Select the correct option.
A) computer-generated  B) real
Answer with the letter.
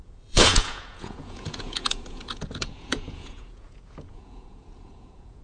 A